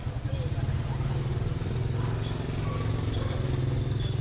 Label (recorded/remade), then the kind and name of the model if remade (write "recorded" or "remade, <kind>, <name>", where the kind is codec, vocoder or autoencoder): recorded